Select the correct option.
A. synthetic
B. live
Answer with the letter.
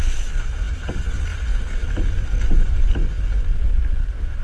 B